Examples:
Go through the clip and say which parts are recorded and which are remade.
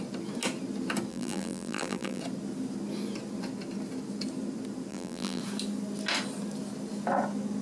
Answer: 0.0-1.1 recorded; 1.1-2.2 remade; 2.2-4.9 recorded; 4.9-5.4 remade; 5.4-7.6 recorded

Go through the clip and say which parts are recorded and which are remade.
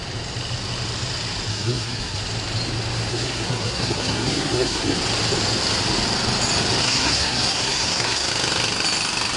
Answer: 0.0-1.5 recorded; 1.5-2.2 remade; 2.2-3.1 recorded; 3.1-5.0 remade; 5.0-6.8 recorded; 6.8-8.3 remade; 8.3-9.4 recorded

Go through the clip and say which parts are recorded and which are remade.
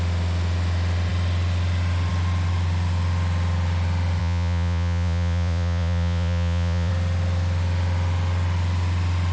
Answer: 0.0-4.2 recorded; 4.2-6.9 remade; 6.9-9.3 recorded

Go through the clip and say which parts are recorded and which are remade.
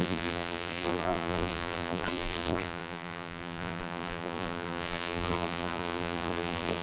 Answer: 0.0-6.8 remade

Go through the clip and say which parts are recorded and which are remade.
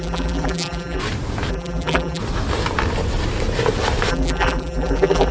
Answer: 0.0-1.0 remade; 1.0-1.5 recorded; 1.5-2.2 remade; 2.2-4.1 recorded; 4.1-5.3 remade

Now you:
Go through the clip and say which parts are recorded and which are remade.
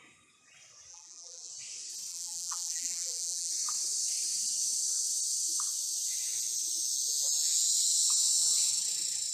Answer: 0.0-0.9 recorded; 0.9-1.5 remade; 1.5-2.1 recorded; 2.1-3.5 remade; 3.5-9.3 recorded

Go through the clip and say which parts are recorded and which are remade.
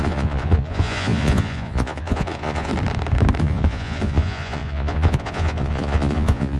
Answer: 0.0-2.7 remade; 2.7-3.4 recorded; 3.4-6.6 remade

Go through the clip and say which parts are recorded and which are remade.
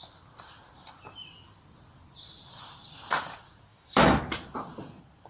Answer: 0.0-3.7 recorded; 3.7-4.2 remade; 4.2-5.3 recorded